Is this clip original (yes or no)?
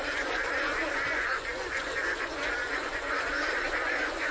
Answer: no